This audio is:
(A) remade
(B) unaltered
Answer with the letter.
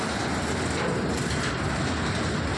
B